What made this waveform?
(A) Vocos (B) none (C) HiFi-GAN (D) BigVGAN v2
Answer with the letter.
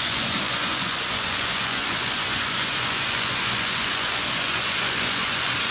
A